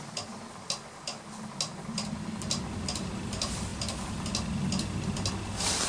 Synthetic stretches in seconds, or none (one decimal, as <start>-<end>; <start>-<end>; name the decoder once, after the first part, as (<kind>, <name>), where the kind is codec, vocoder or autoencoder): none